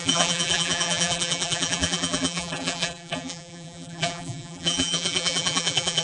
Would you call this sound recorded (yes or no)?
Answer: no